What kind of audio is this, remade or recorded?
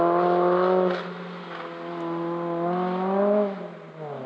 recorded